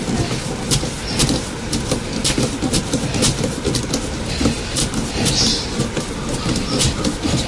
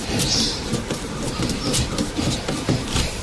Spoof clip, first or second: second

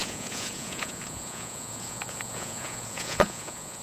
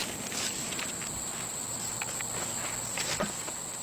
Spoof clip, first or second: first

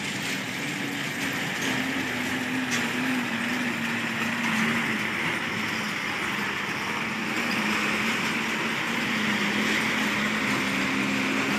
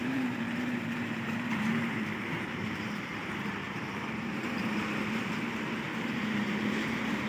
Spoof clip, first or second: second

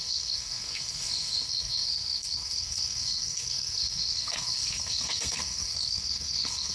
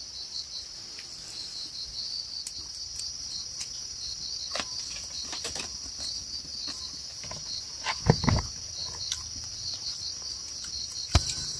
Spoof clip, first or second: first